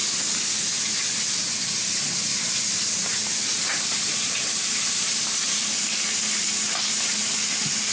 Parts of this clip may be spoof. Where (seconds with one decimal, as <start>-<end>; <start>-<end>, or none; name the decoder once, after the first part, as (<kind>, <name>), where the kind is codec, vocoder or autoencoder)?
2.3-6.9 (vocoder, BigVGAN v2)